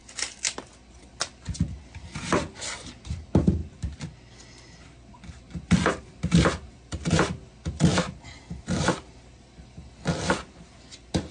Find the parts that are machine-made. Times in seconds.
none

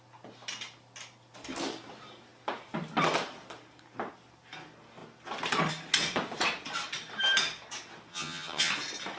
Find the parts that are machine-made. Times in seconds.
8.1-8.7 (vocoder, HiFi-GAN)

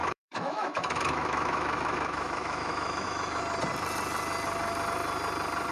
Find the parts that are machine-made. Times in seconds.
0.0-3.4 (autoencoder, DAC-VAE)

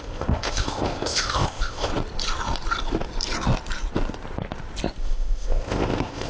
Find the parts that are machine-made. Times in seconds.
0.0-1.9 (codec, ZipCodec); 5.0-6.3

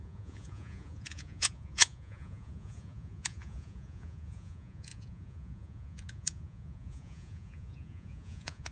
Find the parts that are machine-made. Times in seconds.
0.0-8.7 (vocoder, Vocos)

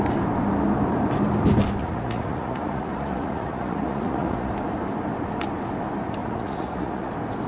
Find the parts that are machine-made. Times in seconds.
1.8-4.5 (vocoder, Vocos); 6.2-7.1

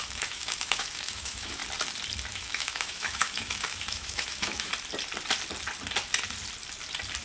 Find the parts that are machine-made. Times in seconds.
0.0-1.6 (autoencoder, DAC-VAE); 2.3-4.7

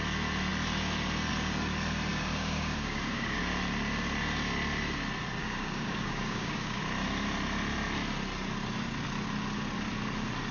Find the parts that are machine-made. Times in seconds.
2.1-3.4 (codec, DAC); 5.4-6.8